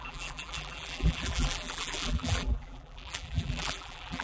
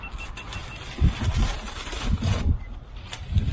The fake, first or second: first